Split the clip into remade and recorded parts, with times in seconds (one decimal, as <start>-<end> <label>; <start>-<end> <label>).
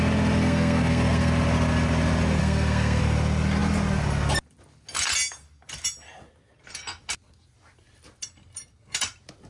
0.0-0.4 recorded; 0.4-1.3 remade; 1.3-2.4 recorded; 2.4-3.0 remade; 3.0-9.5 recorded